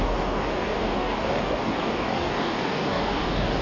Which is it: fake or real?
fake